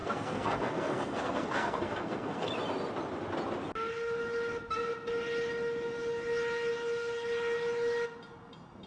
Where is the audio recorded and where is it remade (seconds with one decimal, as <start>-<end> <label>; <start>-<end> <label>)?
0.0-2.5 remade; 2.5-8.9 recorded